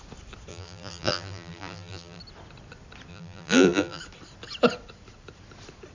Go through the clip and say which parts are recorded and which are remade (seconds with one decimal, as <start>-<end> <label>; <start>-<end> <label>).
0.0-0.5 recorded; 0.5-2.2 remade; 2.2-3.1 recorded; 3.1-4.0 remade; 4.0-5.9 recorded